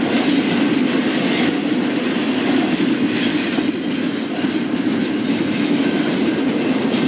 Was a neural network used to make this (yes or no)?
no